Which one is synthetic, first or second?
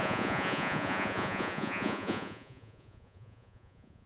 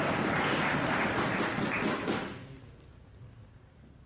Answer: first